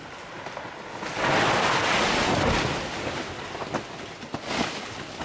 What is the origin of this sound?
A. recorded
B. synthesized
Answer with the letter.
A